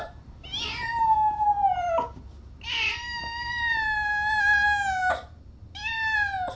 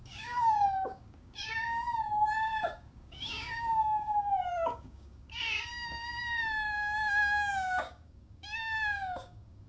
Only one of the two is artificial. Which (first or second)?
second